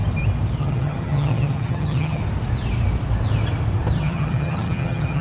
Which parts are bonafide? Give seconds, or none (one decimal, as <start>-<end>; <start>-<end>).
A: 0.0-0.6; 2.2-4.0